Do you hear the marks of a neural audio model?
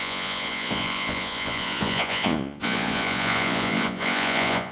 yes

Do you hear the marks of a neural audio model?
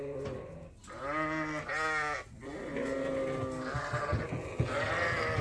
no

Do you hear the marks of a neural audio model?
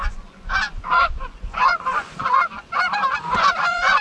yes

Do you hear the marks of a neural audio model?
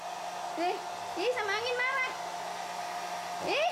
no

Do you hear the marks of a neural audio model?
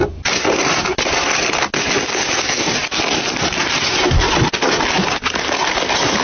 no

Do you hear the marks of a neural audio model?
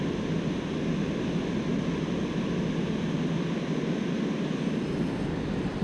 no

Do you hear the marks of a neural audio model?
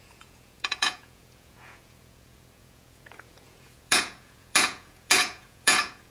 yes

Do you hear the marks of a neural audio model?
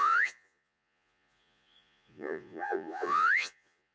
yes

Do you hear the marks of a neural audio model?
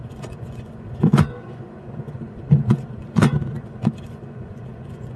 yes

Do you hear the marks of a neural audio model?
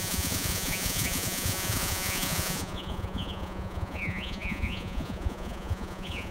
yes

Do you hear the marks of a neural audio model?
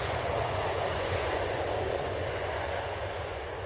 yes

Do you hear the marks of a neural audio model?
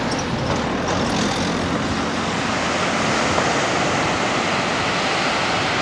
no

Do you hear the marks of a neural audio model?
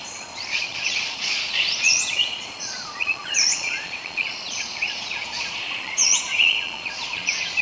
yes